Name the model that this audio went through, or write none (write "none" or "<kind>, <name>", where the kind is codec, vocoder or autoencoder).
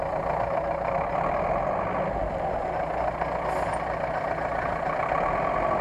none